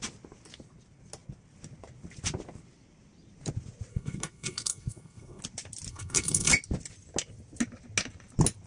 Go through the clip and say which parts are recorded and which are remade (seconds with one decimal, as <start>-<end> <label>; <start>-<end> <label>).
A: 0.0-3.9 recorded; 3.9-5.4 remade; 5.4-5.9 recorded; 5.9-6.5 remade; 6.5-8.7 recorded